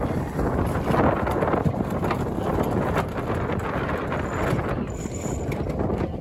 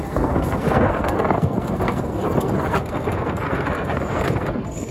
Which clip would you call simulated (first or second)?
second